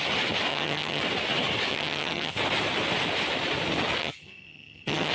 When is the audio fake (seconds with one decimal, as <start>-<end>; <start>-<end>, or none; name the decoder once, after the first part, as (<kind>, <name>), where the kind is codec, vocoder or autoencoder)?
0.5-1.0 (vocoder, HiFi-GAN); 1.7-2.3; 4.0-5.1